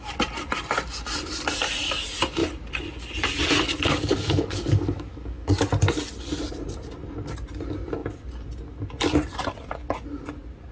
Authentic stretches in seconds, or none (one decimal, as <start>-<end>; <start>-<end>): 0.0-4.0; 5.5-10.7